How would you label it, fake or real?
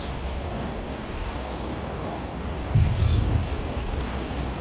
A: fake